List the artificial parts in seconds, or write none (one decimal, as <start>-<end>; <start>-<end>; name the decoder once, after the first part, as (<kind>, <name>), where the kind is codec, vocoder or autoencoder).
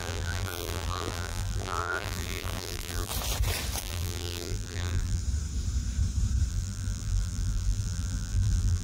0.0-3.1 (vocoder, BigVGAN v2); 3.8-5.2; 6.5-8.8